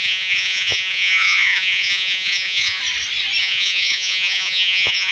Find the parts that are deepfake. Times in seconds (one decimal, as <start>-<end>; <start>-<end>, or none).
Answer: 0.0-2.8; 3.4-5.1